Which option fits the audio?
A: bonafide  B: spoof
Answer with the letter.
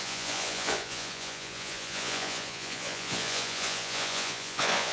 B